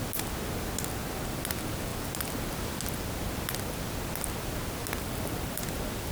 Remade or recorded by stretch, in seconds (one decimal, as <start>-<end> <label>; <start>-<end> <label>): 0.0-5.0 recorded; 5.0-5.6 remade; 5.6-6.1 recorded